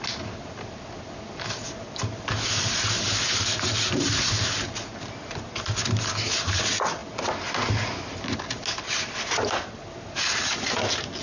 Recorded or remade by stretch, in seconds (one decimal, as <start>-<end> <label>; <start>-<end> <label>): 0.0-11.2 recorded

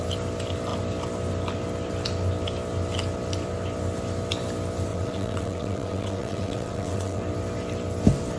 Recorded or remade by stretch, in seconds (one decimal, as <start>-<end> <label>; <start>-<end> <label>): 0.0-4.9 recorded; 4.9-7.2 remade; 7.2-8.4 recorded

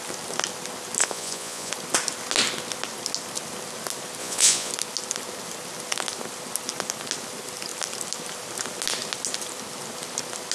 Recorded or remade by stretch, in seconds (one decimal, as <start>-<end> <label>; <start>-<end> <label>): 0.0-1.0 recorded; 1.0-1.7 remade; 1.7-4.2 recorded; 4.2-4.7 remade; 4.7-10.5 recorded

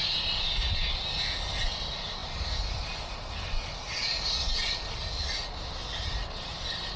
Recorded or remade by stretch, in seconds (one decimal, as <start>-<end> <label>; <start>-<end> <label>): 0.0-7.0 recorded

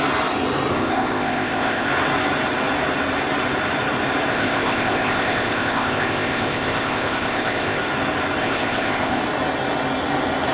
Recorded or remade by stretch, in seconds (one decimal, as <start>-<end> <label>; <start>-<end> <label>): 0.0-0.7 recorded; 0.7-1.9 remade; 1.9-4.3 recorded; 4.3-7.8 remade; 7.8-8.4 recorded; 8.4-9.2 remade; 9.2-10.5 recorded